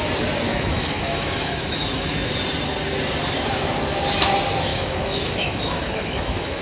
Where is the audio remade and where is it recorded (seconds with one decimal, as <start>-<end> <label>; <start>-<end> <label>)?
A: 0.0-0.5 recorded; 0.5-2.3 remade; 2.3-4.7 recorded; 4.7-6.6 remade